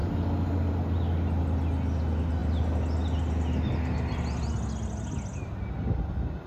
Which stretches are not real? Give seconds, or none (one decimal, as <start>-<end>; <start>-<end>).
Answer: none